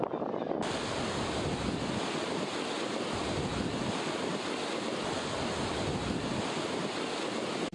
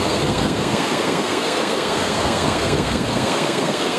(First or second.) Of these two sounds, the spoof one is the second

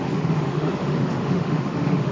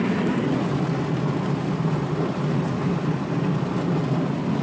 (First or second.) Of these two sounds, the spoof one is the first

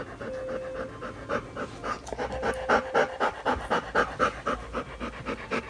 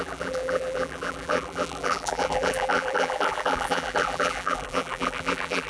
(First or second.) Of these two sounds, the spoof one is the second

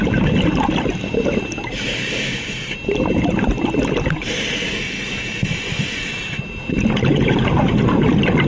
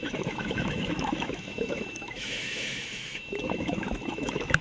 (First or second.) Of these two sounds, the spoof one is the second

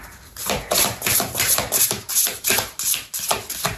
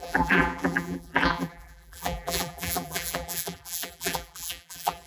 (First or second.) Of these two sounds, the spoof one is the second